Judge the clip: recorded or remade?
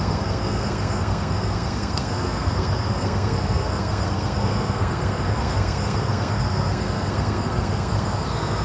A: remade